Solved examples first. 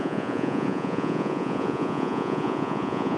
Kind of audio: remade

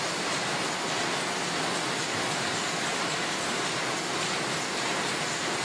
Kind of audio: recorded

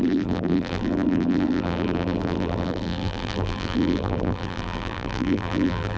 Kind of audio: remade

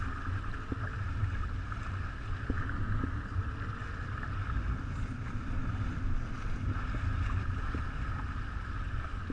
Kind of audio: recorded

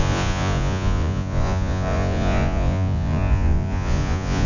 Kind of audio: remade